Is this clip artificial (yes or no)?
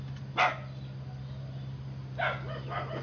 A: no